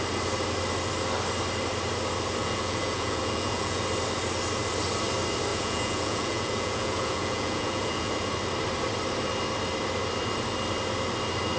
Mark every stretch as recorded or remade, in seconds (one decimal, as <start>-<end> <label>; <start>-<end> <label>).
0.0-2.4 recorded; 2.4-3.8 remade; 3.8-5.5 recorded; 5.5-8.3 remade; 8.3-11.6 recorded